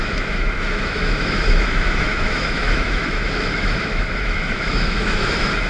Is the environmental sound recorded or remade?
remade